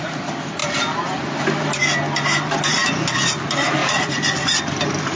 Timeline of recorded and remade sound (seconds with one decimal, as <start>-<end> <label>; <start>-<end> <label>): 0.0-0.6 recorded; 0.6-1.8 remade; 1.8-3.8 recorded; 3.8-5.2 remade